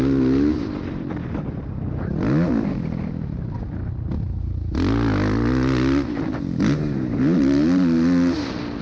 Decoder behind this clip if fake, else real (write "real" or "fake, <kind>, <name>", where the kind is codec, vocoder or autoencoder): real